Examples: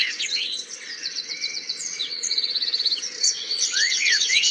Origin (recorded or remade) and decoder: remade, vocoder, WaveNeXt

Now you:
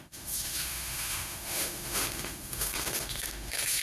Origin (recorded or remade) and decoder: remade, autoencoder, DAC-VAE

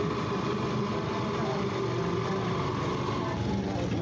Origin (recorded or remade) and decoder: recorded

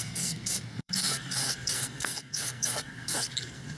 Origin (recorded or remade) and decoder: remade, codec, SNAC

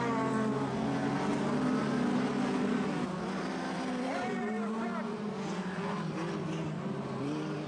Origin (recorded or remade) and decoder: recorded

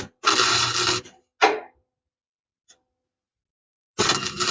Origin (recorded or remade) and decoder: recorded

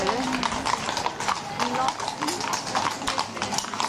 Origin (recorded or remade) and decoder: recorded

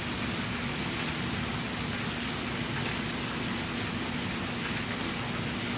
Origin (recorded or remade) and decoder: recorded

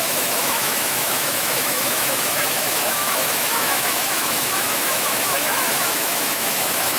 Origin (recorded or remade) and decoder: remade, autoencoder, DAC-VAE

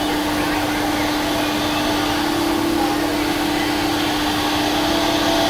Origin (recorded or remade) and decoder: recorded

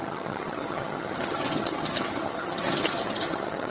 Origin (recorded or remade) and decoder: remade, vocoder, HiFi-GAN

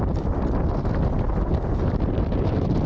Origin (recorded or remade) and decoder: recorded